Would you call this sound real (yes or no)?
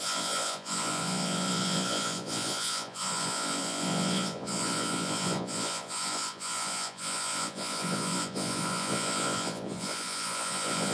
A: no